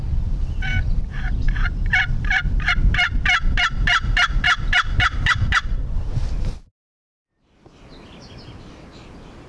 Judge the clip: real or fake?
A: real